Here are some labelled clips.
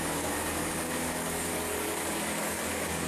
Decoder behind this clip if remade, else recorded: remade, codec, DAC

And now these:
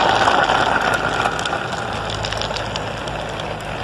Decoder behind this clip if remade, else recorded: recorded